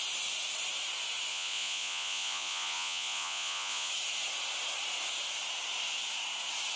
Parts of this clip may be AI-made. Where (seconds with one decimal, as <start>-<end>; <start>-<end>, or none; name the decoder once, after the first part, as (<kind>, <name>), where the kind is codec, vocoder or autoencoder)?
1.3-3.9 (vocoder, Vocos)